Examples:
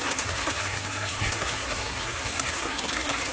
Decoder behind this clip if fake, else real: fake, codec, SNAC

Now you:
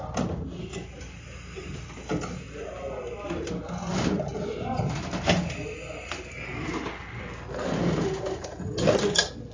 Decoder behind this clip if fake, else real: real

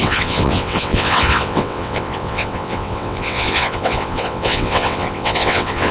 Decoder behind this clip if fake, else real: fake, vocoder, WaveNeXt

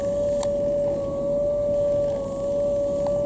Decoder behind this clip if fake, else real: real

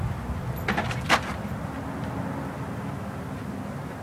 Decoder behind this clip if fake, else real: real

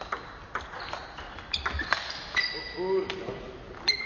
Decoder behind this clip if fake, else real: real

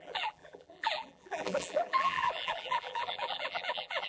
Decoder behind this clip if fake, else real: fake, vocoder, BigVGAN v2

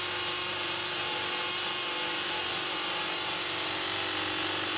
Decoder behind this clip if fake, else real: real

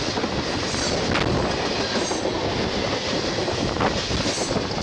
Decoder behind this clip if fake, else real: real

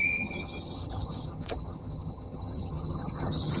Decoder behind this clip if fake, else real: fake, vocoder, HiFi-GAN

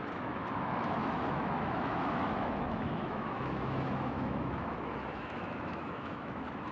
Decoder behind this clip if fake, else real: fake, autoencoder, DAC-VAE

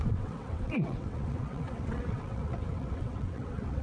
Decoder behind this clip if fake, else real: fake, vocoder, WaveNeXt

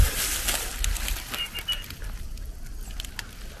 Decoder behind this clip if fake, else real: real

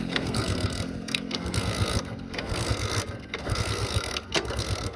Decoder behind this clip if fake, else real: fake, codec, SNAC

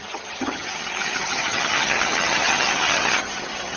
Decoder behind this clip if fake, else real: fake, vocoder, HiFi-GAN